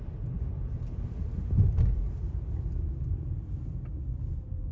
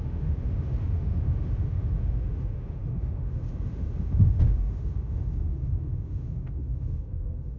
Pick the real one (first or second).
first